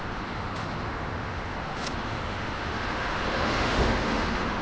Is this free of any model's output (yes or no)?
no